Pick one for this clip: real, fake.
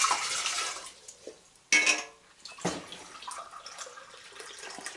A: real